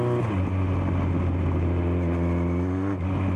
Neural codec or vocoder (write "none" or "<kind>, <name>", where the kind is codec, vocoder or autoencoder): none